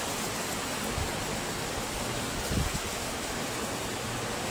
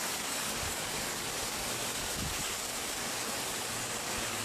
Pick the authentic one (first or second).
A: first